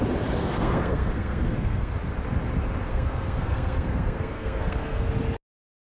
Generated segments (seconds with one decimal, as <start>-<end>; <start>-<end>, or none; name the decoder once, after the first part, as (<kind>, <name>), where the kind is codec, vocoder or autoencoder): 0.4-1.9 (codec, SNAC); 2.9-5.1